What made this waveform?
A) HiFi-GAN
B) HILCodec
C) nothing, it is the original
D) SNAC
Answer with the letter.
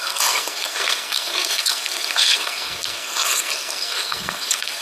D